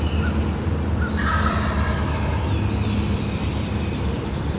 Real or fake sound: real